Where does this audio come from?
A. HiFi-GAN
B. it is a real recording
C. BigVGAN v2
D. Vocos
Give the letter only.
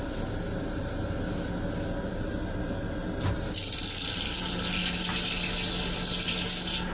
B